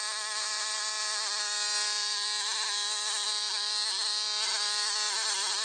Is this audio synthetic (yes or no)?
no